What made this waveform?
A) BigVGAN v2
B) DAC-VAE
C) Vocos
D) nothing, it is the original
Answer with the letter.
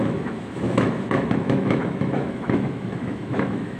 B